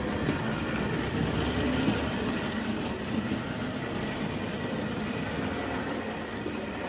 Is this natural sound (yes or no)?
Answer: yes